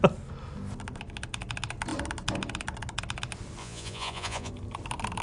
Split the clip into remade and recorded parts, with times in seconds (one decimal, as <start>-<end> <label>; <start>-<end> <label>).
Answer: 0.0-3.6 recorded; 3.6-4.5 remade; 4.5-5.2 recorded